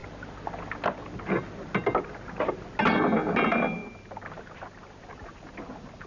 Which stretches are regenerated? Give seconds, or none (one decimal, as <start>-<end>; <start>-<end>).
none